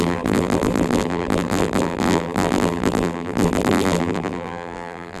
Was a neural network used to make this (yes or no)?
yes